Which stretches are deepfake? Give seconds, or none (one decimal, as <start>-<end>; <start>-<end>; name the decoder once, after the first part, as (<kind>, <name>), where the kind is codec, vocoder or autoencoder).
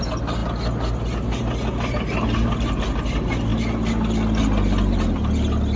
none